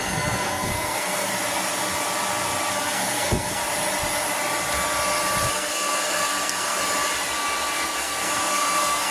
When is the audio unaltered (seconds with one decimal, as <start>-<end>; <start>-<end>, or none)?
1.3-2.7; 3.6-5.5; 6.8-7.7